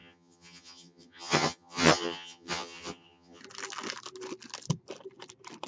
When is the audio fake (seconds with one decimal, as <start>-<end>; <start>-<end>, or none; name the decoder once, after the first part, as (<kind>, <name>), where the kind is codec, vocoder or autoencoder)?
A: 0.0-3.4 (vocoder, HiFi-GAN)